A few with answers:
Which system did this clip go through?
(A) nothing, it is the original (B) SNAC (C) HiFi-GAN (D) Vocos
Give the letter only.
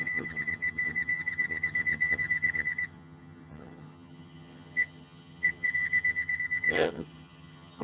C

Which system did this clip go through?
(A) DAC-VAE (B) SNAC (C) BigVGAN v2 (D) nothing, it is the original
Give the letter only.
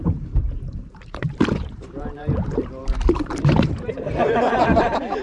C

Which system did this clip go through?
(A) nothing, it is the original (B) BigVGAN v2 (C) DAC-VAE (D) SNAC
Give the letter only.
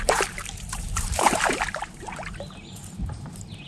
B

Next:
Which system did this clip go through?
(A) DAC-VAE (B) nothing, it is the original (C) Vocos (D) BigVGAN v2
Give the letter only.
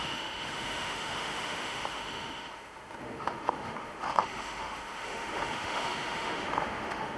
A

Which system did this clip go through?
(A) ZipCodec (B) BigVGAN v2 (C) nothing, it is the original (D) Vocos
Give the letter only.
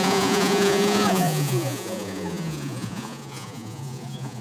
D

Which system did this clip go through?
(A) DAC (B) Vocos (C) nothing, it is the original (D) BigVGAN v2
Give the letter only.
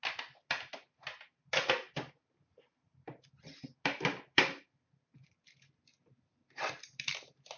C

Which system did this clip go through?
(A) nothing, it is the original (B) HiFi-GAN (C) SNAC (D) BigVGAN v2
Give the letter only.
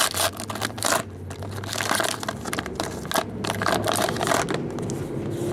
A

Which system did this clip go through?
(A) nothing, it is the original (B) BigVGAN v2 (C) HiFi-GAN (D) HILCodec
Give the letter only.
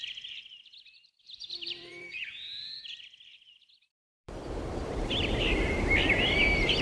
B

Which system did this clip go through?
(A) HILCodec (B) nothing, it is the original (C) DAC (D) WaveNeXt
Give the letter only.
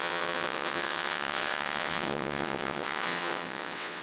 D